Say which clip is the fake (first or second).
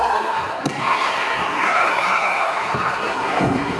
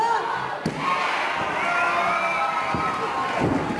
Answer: first